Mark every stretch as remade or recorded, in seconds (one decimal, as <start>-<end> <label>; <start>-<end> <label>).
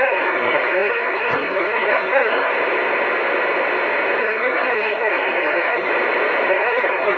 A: 0.0-2.5 remade; 2.5-4.2 recorded; 4.2-5.9 remade; 5.9-6.5 recorded; 6.5-7.2 remade